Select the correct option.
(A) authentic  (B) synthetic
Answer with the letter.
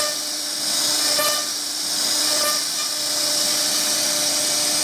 A